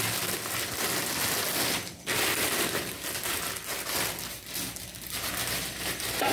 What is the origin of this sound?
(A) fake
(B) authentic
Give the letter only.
B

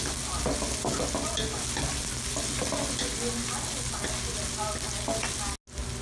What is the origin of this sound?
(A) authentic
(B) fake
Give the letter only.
A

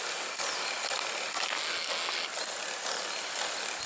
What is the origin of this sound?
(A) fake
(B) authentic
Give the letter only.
B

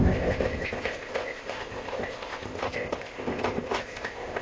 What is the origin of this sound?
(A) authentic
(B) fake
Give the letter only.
B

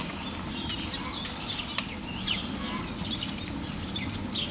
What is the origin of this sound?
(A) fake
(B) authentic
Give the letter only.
B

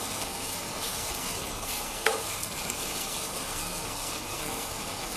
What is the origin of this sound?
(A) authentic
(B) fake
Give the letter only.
B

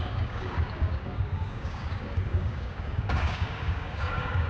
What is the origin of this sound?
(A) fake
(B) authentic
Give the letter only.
A